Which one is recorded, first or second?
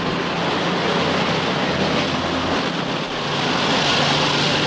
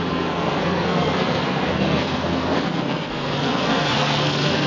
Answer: first